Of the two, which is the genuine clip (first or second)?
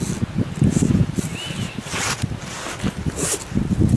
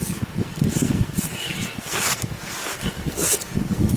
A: first